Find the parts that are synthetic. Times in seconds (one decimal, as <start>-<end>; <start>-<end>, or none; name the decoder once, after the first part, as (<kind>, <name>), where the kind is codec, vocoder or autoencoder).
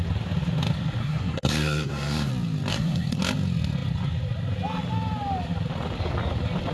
1.0-2.3 (codec, SNAC); 2.7-3.2